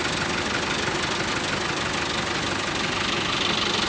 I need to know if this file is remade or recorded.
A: recorded